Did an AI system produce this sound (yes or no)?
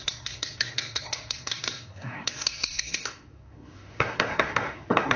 yes